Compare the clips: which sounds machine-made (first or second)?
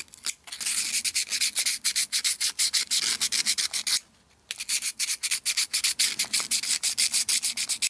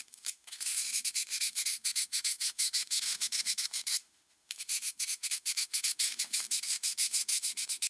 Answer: second